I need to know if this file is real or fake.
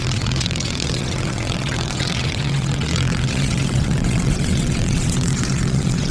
fake